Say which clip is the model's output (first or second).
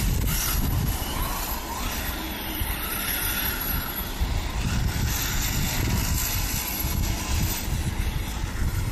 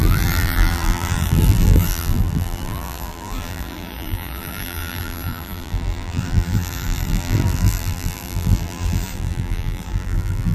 second